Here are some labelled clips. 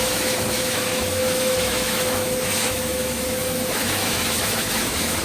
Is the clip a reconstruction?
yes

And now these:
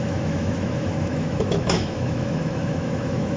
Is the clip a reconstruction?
yes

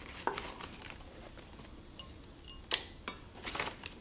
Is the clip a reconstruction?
no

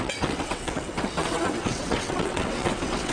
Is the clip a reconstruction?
yes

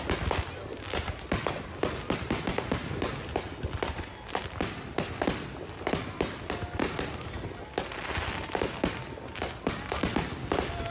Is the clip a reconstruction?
no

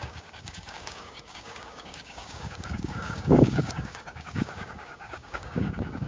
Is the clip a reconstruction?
yes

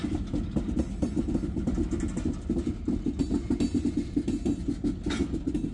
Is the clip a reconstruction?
no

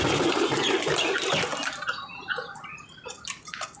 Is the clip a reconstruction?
no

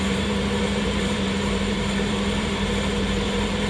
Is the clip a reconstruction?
yes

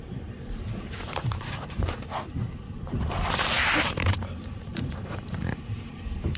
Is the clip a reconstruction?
yes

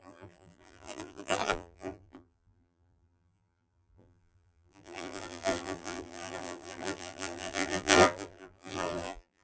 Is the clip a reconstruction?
yes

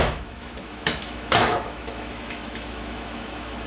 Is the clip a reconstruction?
yes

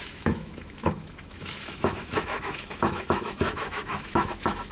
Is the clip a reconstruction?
yes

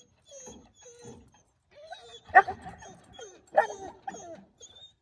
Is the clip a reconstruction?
no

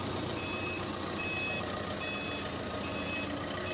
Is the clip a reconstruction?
no